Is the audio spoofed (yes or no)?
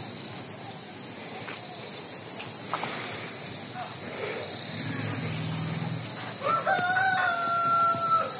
no